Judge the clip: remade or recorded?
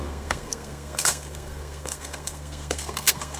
remade